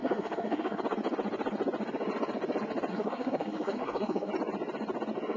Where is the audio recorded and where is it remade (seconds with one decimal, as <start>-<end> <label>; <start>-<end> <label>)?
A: 0.0-0.8 remade; 0.8-2.9 recorded; 2.9-4.3 remade; 4.3-5.4 recorded